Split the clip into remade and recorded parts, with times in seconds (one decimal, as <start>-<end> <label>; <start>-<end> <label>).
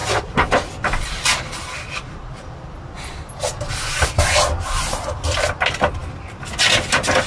0.0-7.3 recorded